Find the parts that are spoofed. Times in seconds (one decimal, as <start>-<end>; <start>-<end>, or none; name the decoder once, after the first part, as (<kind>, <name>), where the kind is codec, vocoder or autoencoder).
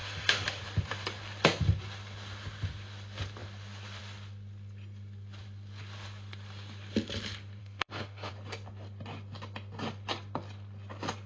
0.0-0.6 (autoencoder, DAC-VAE); 7.6-8.3